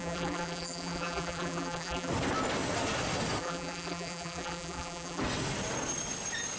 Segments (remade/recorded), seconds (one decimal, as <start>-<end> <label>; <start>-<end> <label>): 0.0-2.1 remade; 2.1-3.4 recorded; 3.4-5.2 remade; 5.2-6.6 recorded